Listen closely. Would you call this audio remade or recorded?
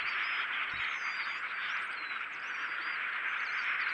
recorded